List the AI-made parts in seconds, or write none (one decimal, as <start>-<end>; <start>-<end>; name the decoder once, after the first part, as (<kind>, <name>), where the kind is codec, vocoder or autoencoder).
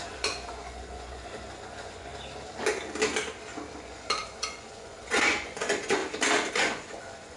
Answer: 0.0-2.1 (vocoder, Vocos); 3.8-6.0; 6.5-7.4